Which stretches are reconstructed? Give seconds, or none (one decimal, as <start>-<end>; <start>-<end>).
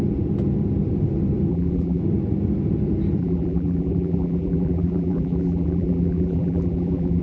1.5-2.0; 3.2-7.2